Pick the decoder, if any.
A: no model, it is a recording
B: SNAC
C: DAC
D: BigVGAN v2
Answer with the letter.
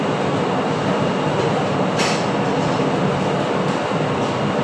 A